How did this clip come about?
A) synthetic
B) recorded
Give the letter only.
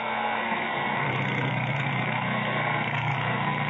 A